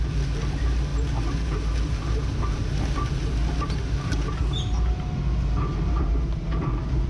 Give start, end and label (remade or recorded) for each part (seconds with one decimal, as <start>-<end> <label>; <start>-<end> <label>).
0.0-7.1 recorded